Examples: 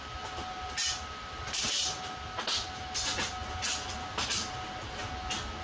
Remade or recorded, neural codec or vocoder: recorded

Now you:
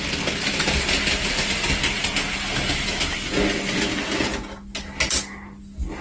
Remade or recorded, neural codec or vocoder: recorded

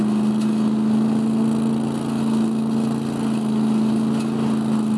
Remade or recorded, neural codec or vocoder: recorded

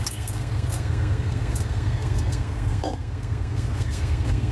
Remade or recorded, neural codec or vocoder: remade, codec, SNAC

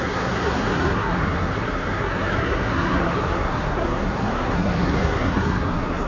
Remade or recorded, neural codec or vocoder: remade, codec, SNAC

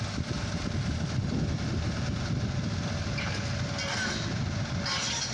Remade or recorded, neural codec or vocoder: recorded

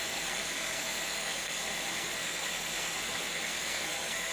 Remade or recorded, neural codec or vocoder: remade, codec, SNAC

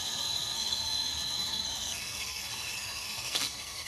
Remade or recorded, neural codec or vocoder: remade, codec, SNAC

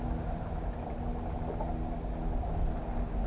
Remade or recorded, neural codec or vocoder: recorded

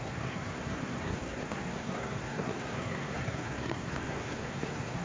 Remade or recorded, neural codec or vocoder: remade, codec, SNAC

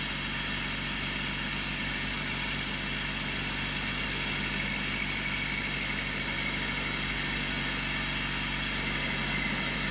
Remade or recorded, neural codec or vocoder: recorded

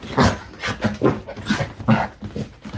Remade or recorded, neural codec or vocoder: recorded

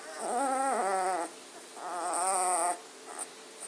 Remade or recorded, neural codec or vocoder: recorded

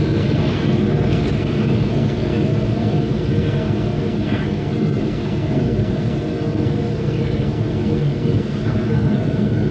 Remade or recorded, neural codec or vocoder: remade, codec, SNAC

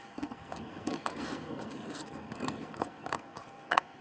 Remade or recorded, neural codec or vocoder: remade, codec, SNAC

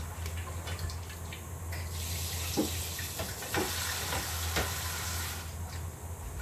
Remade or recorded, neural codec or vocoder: recorded